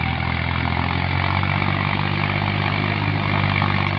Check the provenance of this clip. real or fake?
real